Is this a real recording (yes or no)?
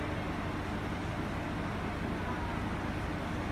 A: yes